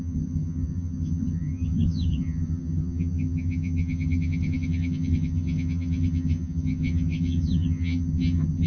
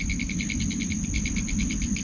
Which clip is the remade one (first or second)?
first